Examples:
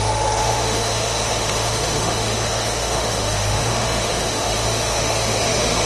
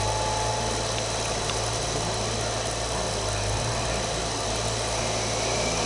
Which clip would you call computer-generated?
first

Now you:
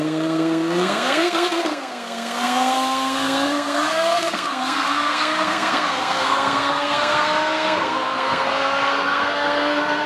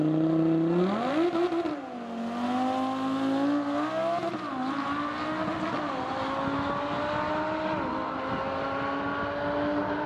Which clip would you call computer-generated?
first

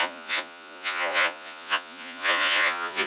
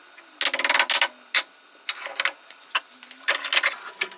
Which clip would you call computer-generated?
first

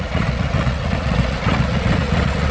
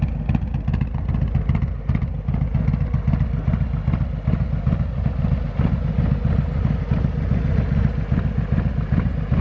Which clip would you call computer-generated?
first